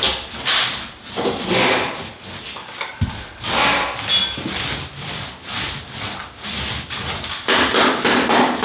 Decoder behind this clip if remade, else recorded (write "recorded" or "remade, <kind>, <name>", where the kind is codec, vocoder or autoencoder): recorded